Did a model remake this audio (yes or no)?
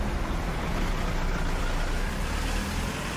no